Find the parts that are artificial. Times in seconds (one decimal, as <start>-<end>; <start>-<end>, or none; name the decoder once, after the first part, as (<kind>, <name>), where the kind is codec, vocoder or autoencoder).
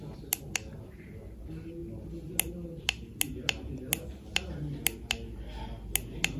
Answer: none